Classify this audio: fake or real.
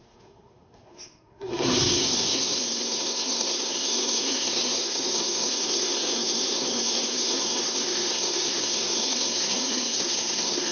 fake